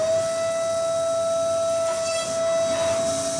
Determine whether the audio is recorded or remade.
recorded